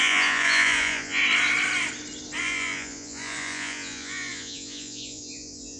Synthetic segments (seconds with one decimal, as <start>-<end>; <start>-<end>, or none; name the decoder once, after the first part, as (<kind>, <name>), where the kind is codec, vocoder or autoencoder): 0.0-1.2 (vocoder, Vocos); 2.4-5.8